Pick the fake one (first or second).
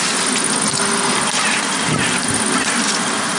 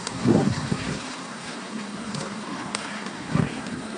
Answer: second